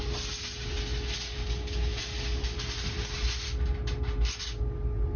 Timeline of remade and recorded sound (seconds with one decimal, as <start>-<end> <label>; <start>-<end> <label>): 0.0-5.2 recorded